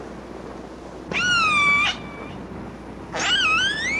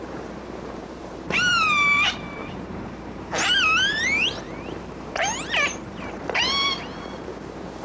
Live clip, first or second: first